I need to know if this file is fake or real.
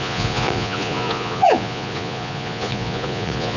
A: fake